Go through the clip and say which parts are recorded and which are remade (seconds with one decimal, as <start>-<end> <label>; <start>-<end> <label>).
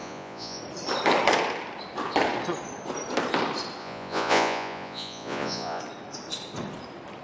0.0-0.6 remade; 0.6-3.8 recorded; 3.8-5.8 remade; 5.8-7.2 recorded